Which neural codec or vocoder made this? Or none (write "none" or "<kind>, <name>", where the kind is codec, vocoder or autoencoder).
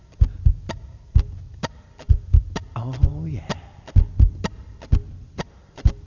vocoder, BigVGAN v2